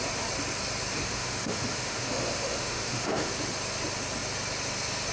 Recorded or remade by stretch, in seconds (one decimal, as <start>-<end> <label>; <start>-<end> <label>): 0.0-1.0 recorded; 1.0-3.3 remade; 3.3-5.1 recorded